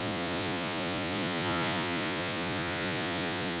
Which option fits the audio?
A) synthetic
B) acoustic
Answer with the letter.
A